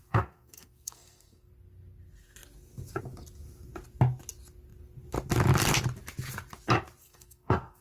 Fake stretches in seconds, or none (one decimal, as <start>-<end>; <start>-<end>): 0.0-1.5; 7.0-7.8